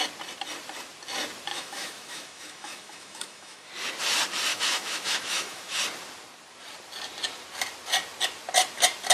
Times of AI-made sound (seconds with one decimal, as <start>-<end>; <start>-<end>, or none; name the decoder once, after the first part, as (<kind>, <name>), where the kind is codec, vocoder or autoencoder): 1.5-3.7 (autoencoder, DAC-VAE); 4.5-5.8